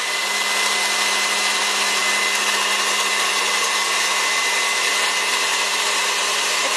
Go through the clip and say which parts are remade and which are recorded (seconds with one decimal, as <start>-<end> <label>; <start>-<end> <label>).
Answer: 0.0-3.8 recorded; 3.8-6.8 remade